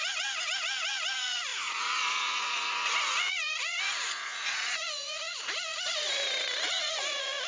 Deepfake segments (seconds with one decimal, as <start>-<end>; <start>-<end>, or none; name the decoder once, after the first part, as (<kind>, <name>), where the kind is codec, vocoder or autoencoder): 0.0-7.5 (vocoder, Vocos)